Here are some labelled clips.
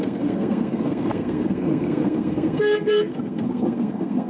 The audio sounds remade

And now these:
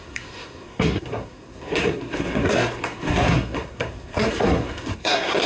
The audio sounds remade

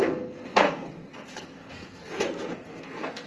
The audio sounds remade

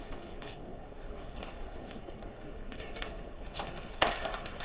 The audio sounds remade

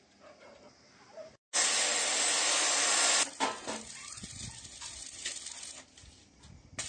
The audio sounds recorded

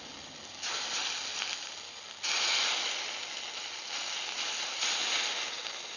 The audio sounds recorded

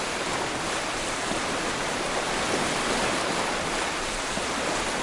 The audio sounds recorded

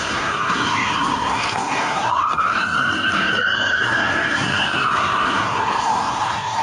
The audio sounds remade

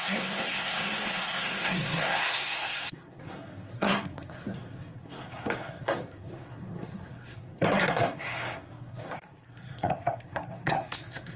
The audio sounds remade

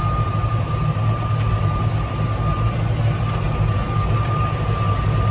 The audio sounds recorded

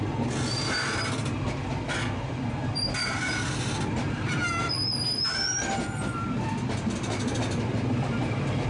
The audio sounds recorded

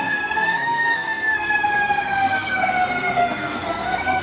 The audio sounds remade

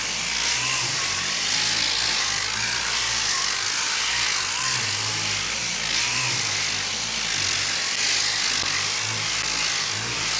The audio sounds recorded